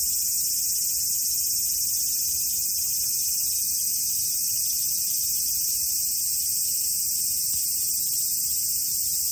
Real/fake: real